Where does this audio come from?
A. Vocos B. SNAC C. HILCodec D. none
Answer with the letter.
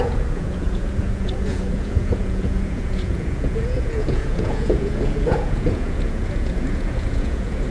A